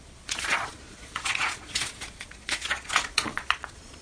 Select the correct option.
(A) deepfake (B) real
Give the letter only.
A